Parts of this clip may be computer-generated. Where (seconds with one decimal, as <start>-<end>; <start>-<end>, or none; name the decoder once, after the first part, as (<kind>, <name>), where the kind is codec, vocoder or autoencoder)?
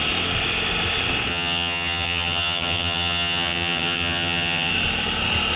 1.3-4.7 (vocoder, HiFi-GAN)